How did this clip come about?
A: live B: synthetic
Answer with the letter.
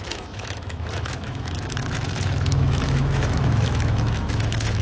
B